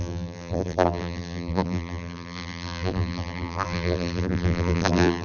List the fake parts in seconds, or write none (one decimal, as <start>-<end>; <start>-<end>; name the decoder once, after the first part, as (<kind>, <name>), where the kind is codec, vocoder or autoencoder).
0.0-5.2 (vocoder, BigVGAN v2)